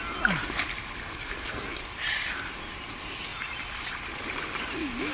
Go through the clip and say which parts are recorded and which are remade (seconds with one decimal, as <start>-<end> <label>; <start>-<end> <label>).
0.0-1.0 recorded; 1.0-1.8 remade; 1.8-5.1 recorded